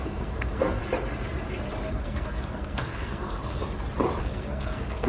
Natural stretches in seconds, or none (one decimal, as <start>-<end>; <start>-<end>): 0.8-1.9; 3.6-4.2